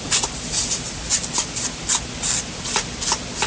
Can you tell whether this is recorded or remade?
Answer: recorded